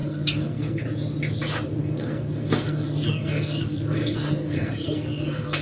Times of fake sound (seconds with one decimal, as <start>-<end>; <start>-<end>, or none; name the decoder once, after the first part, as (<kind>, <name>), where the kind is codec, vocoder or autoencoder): 0.0-0.8 (codec, SNAC); 1.8-5.6